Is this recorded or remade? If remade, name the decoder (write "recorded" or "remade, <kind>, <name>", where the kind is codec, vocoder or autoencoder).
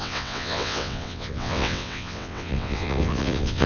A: remade, vocoder, WaveNeXt